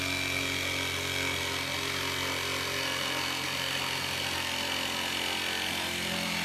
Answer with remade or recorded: recorded